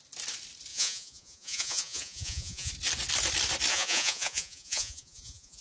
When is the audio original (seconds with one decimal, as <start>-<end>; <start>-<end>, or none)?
0.0-0.7; 2.7-3.7